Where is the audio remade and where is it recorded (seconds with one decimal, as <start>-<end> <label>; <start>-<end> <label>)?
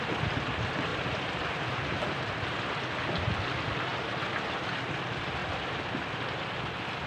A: 0.0-0.9 recorded; 0.9-2.3 remade; 2.3-5.4 recorded; 5.4-5.9 remade; 5.9-7.1 recorded